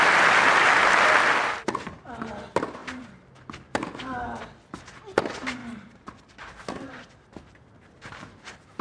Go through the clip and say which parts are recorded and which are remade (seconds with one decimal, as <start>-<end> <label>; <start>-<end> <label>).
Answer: 0.0-5.6 recorded; 5.6-6.6 remade; 6.6-8.8 recorded